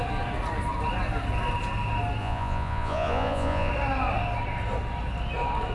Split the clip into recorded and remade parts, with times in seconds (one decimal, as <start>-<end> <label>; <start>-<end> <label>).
0.0-2.2 recorded; 2.2-3.7 remade; 3.7-5.7 recorded